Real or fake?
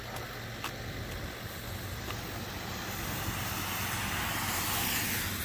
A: real